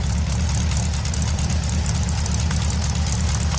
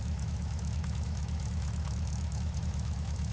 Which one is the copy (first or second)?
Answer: second